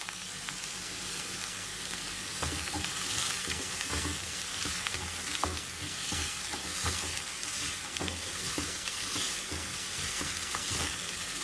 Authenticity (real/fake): fake